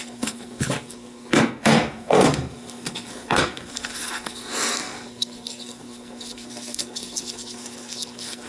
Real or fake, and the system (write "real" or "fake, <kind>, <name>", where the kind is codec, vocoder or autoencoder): fake, codec, SNAC